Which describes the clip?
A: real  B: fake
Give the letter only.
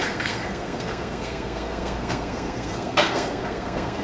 B